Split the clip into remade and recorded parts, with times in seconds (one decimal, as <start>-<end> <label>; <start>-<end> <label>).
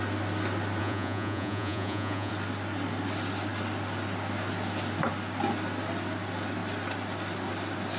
0.0-0.8 recorded; 0.8-2.3 remade; 2.3-8.0 recorded